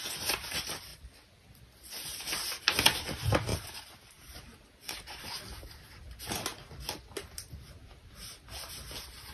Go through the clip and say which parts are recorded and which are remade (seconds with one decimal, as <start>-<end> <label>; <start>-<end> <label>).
0.0-3.5 recorded; 3.5-6.3 remade; 6.3-7.8 recorded; 7.8-8.3 remade; 8.3-9.3 recorded